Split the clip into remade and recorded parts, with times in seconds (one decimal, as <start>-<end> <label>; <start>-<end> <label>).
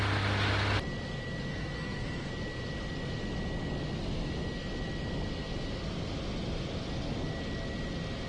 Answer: 0.0-1.5 recorded; 1.5-2.3 remade; 2.3-8.3 recorded